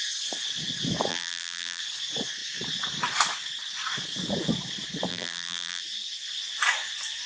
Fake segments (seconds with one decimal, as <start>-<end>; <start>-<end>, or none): 1.1-1.8; 5.1-5.8